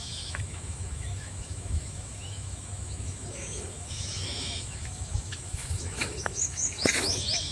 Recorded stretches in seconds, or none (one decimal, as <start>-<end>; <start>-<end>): none